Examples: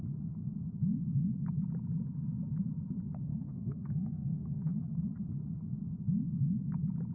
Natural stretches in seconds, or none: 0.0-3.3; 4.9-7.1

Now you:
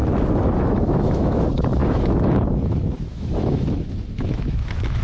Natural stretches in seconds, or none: 0.0-0.6